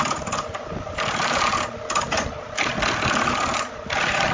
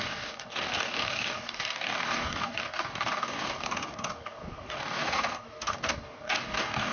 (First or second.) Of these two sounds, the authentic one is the first